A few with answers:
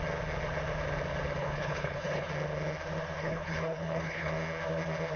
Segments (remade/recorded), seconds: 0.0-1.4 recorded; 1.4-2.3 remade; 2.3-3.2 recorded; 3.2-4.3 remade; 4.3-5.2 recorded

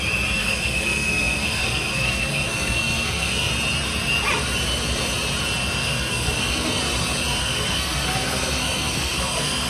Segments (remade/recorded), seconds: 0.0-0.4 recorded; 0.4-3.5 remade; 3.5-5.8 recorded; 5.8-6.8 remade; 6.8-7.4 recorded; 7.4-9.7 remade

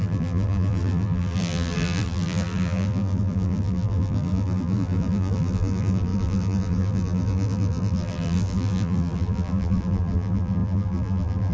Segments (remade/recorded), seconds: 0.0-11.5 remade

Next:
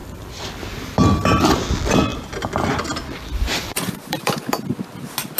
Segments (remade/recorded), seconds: 0.0-2.1 recorded; 2.1-4.5 remade; 4.5-5.4 recorded

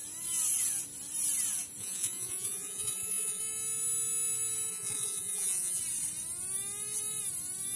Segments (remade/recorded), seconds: 0.0-1.8 recorded; 1.8-3.4 remade; 3.4-4.7 recorded; 4.7-5.8 remade; 5.8-7.8 recorded

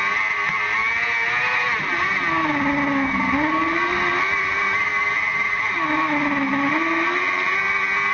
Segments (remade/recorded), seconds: 0.0-8.1 recorded

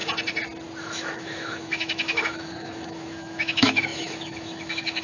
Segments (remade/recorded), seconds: 0.0-0.8 recorded; 0.8-5.0 remade